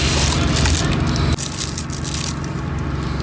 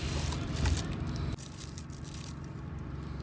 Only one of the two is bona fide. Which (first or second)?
first